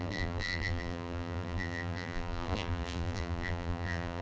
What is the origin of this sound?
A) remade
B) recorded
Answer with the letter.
A